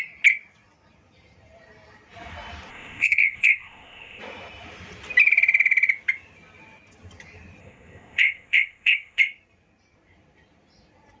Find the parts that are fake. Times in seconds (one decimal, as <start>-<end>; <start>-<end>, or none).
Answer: 2.7-4.2; 7.6-9.2